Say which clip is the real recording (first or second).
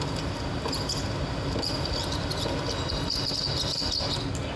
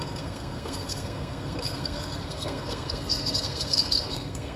first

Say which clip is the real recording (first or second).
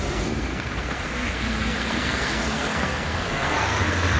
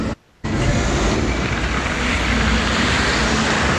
second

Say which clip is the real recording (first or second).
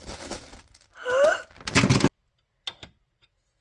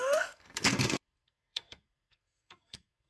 first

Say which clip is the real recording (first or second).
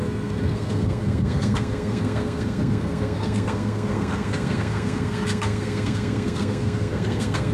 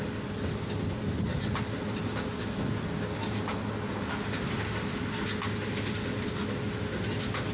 second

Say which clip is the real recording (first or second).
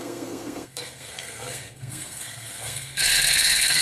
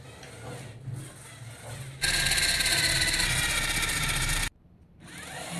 second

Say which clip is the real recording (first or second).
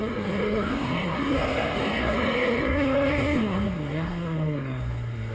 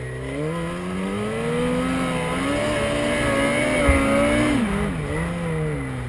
second